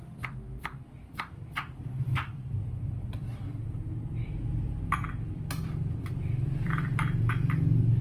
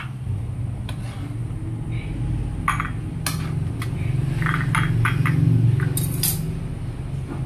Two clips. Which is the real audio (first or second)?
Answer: second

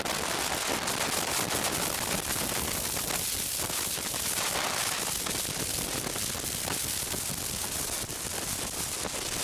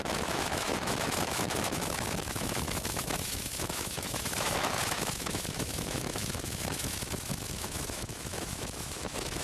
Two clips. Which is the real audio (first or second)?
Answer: first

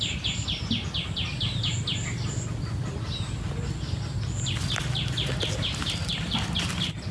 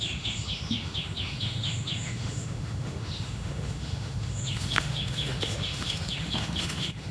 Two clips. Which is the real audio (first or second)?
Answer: first